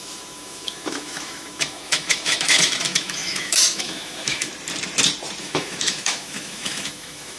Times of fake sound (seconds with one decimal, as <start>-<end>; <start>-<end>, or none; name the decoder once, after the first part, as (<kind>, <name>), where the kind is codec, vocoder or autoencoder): 0.0-4.5 (autoencoder, DAC-VAE); 5.4-7.4